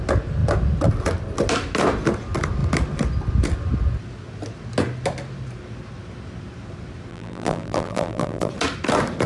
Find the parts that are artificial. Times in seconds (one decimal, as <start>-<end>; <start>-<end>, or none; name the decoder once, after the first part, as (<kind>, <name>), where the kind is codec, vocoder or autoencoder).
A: 7.1-8.5 (vocoder, BigVGAN v2)